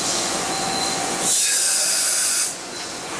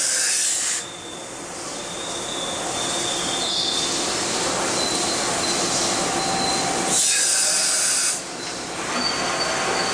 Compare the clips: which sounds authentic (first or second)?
second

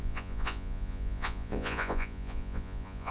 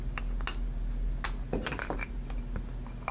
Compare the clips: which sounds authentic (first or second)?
second